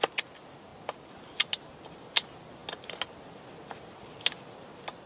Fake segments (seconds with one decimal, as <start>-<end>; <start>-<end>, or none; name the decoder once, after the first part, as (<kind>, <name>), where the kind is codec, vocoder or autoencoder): none